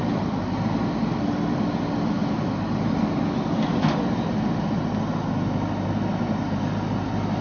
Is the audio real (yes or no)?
yes